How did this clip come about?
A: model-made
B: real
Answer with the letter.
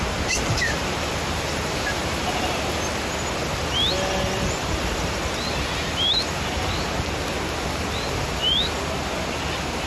B